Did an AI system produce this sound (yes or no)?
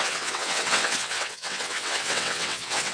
yes